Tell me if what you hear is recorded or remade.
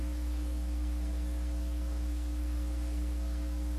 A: remade